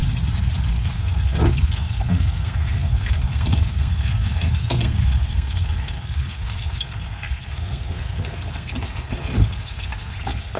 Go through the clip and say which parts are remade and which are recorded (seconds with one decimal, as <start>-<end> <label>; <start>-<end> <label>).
0.0-0.7 recorded; 0.7-10.6 remade